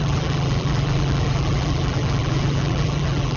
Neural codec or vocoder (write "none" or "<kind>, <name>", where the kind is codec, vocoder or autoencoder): vocoder, BigVGAN v2